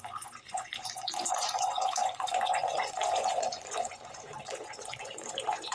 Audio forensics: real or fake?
fake